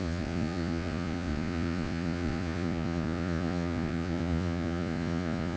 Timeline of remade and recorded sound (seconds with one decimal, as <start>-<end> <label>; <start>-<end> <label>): 0.0-5.6 remade